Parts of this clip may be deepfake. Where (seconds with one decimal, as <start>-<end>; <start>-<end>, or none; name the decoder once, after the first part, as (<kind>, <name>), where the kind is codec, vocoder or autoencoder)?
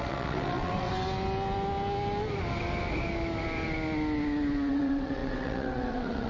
0.0-0.9 (vocoder, WaveNeXt); 4.7-6.3